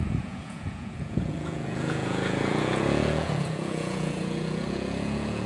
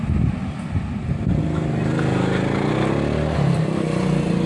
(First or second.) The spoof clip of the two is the first